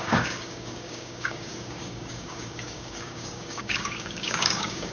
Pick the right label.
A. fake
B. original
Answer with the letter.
A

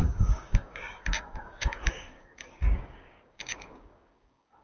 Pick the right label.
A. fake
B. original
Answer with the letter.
A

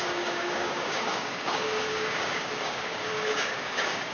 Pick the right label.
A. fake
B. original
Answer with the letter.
A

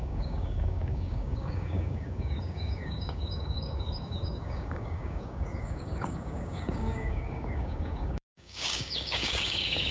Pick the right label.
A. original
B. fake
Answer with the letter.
B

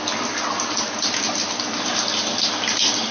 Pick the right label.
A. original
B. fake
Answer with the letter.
A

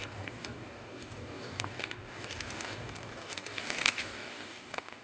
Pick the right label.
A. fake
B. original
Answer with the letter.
A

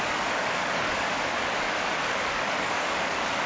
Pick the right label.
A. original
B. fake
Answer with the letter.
B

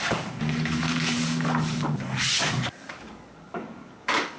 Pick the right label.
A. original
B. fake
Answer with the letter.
B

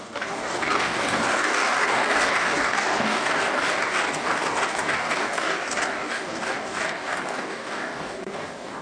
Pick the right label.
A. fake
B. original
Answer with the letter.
A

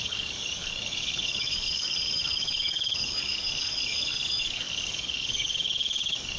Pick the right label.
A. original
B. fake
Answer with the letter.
B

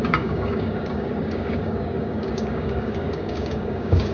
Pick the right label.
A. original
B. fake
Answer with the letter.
B